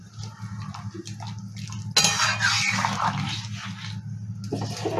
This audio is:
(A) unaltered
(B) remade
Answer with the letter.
A